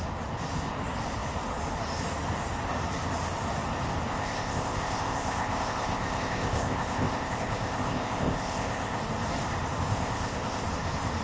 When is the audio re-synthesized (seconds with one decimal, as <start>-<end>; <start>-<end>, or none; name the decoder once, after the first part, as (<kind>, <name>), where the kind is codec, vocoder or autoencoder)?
4.1-9.0 (codec, ZipCodec); 9.9-10.6